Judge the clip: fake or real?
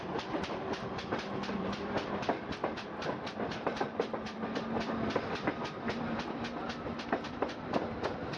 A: fake